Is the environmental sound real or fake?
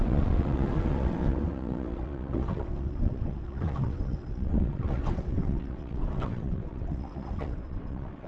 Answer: fake